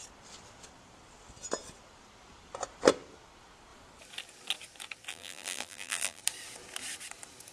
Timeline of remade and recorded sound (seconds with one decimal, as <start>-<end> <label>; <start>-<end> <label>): 0.0-5.1 recorded; 5.1-6.2 remade; 6.2-7.5 recorded